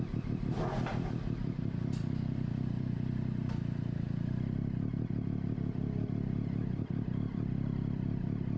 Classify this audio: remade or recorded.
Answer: remade